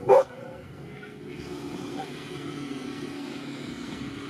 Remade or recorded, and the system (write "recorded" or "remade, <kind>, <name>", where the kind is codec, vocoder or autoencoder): remade, codec, SNAC